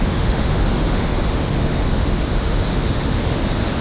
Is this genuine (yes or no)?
no